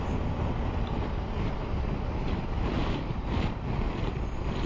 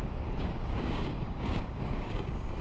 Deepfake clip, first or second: second